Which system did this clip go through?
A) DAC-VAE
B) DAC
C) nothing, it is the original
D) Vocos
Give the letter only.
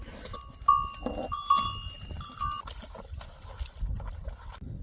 C